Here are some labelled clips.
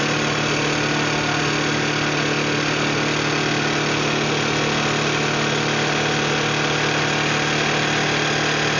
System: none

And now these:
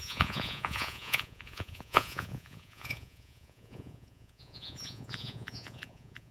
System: vocoder, Vocos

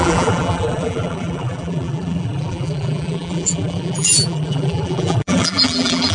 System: vocoder, BigVGAN v2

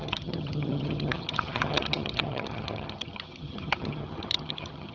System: vocoder, HiFi-GAN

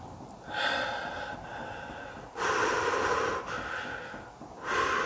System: none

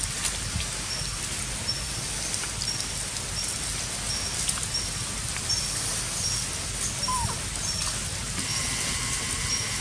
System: none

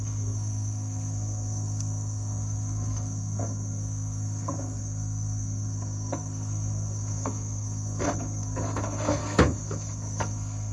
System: codec, SNAC